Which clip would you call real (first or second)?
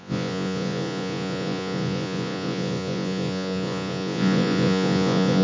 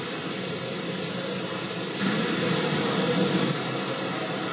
second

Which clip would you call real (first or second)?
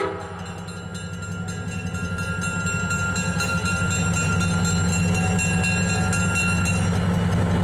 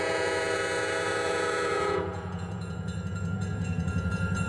first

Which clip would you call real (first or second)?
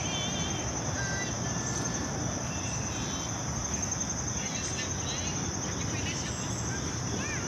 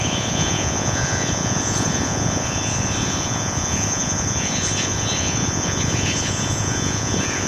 first